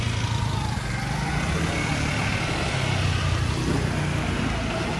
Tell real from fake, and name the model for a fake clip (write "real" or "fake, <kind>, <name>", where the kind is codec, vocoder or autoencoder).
real